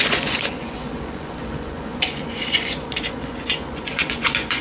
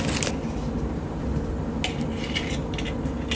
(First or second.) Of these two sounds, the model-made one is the first